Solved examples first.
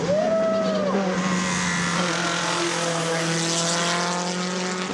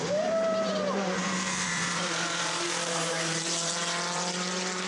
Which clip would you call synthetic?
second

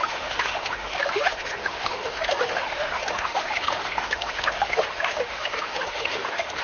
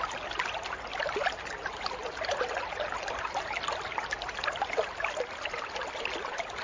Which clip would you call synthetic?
first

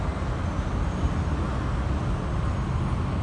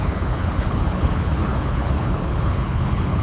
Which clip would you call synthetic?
second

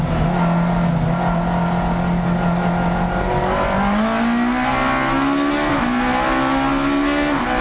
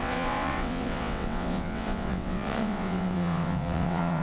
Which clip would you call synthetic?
second